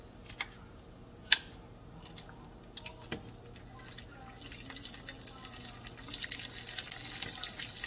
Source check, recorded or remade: recorded